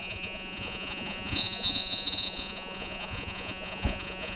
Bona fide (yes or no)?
no